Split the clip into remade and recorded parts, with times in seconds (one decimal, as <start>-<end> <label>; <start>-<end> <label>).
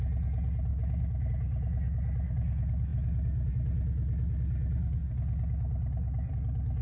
0.0-0.7 recorded; 0.7-1.3 remade; 1.3-6.8 recorded